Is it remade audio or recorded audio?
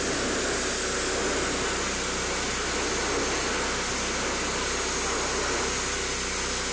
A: recorded